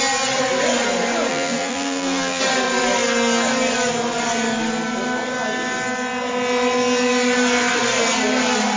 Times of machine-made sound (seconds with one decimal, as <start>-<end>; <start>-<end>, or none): 1.3-2.4